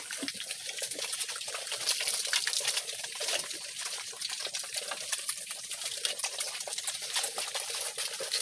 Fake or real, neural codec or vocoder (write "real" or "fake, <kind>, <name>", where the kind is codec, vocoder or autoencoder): real